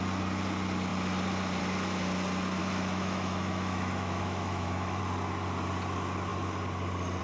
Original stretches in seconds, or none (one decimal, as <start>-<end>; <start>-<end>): 0.0-2.6; 5.0-7.2